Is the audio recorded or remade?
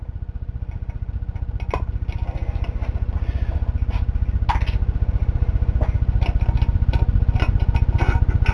recorded